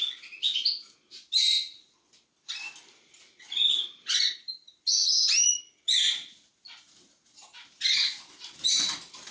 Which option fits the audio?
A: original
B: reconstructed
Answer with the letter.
A